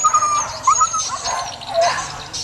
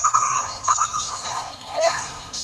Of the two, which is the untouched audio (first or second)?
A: first